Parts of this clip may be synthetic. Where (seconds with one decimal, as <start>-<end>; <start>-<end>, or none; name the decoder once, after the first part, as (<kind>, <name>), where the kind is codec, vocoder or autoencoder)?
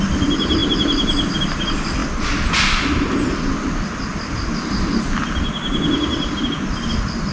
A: none